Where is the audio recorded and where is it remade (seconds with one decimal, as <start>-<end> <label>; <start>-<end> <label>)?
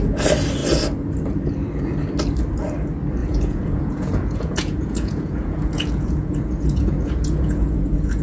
0.0-3.2 recorded; 3.2-8.2 remade